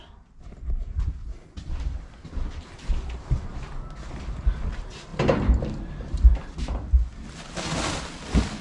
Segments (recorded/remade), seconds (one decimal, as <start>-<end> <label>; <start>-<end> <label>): 0.0-8.6 recorded